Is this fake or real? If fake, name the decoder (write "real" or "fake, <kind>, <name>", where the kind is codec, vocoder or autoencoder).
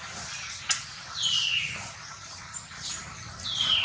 real